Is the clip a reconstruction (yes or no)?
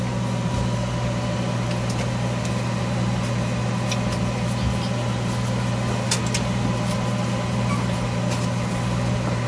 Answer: no